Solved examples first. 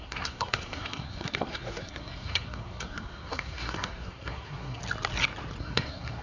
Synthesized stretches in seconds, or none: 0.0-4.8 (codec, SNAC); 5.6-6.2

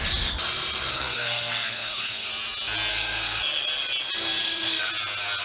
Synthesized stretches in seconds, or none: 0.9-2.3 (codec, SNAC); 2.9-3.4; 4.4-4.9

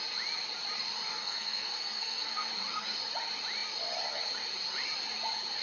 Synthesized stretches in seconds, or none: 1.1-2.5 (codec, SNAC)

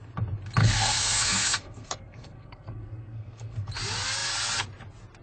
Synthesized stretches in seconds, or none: 0.6-3.7 (codec, SNAC)